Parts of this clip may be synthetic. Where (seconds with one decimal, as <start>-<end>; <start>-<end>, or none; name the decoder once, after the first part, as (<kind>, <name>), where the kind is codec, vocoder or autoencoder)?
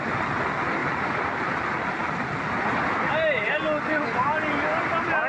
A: none